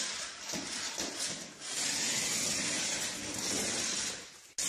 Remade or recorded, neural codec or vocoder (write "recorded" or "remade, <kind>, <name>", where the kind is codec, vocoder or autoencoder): recorded